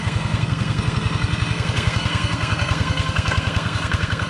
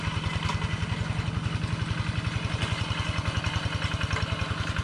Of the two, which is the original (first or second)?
second